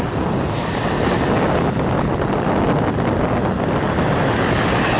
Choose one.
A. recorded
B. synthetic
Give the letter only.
A